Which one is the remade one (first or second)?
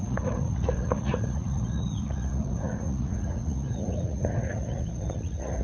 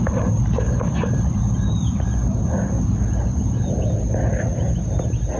first